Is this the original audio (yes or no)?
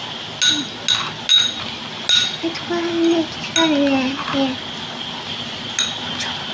yes